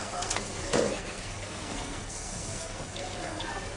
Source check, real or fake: fake